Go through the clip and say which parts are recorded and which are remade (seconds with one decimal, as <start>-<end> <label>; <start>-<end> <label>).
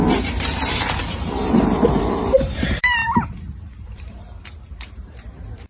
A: 0.0-5.7 remade